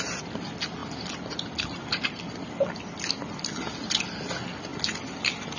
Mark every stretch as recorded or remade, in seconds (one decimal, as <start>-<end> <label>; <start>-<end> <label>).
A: 0.0-5.6 recorded